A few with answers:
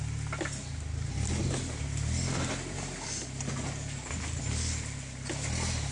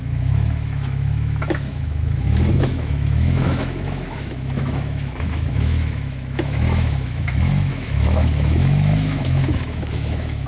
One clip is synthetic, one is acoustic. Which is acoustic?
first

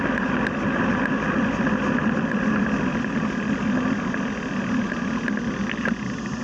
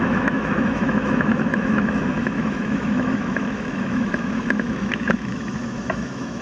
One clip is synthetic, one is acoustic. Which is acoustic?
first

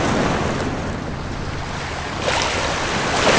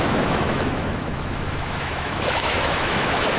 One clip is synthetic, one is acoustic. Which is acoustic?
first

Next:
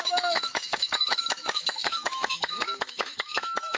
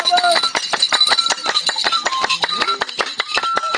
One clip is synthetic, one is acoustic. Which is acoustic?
second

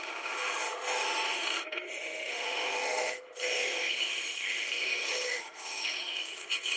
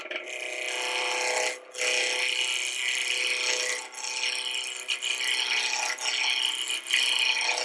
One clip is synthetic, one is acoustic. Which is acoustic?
second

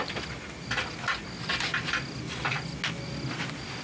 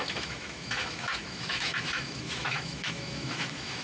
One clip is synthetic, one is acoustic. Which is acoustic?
first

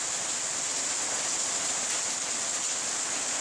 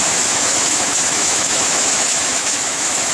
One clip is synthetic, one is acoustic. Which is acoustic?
first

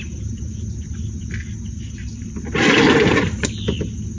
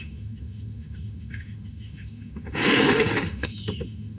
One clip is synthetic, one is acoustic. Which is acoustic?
first